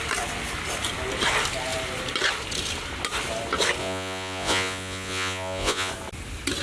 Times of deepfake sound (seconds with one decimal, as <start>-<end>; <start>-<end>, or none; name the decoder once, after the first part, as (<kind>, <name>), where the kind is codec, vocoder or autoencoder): 3.8-5.9 (vocoder, Vocos)